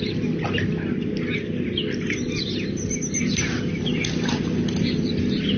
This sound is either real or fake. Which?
real